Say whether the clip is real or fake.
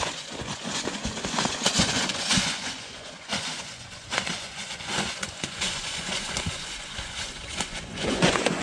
fake